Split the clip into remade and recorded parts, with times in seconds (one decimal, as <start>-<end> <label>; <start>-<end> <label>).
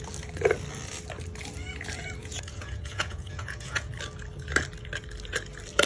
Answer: 0.0-2.2 recorded; 2.2-3.9 remade; 3.9-5.9 recorded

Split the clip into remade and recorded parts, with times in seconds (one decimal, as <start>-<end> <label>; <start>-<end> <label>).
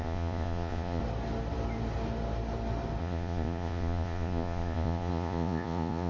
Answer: 0.0-1.0 remade; 1.0-3.0 recorded; 3.0-6.1 remade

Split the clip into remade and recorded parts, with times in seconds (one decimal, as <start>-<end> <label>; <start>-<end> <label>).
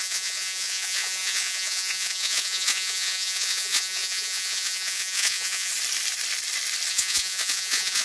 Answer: 0.0-5.7 remade; 5.7-6.9 recorded; 6.9-8.0 remade